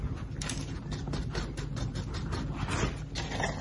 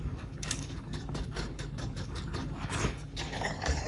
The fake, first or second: second